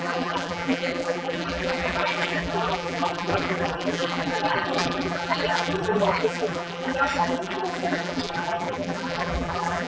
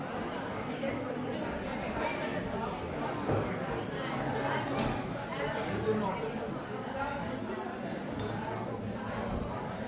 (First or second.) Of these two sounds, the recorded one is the second